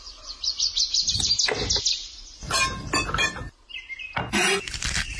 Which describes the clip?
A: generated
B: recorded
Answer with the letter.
B